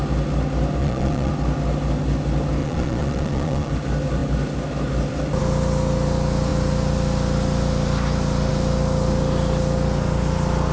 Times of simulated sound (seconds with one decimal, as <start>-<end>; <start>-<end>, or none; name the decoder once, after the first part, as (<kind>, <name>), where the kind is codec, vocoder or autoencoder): 0.8-1.3 (vocoder, Vocos); 2.6-3.7